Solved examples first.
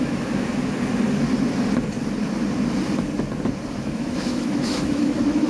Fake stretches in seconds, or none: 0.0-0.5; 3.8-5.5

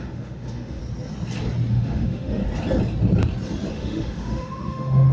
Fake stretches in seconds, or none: 0.0-0.8; 1.7-2.4; 3.7-5.1

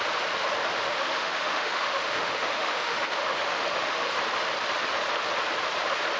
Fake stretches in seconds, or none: 0.6-4.2

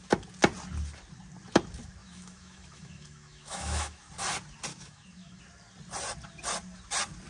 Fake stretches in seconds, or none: 2.0-4.1; 4.7-5.4

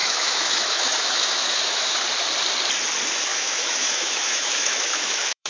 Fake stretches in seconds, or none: 0.0-2.0; 3.3-5.5

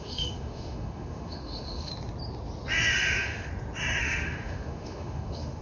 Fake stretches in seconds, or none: 0.0-1.9; 2.9-3.5; 4.0-5.6

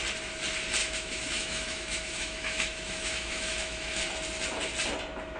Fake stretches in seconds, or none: 0.8-4.0